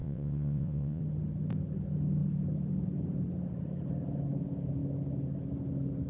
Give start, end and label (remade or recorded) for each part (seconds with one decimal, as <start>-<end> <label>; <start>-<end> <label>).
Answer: 0.0-1.0 remade; 1.0-6.1 recorded